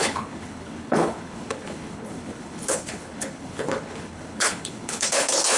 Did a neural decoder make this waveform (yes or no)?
yes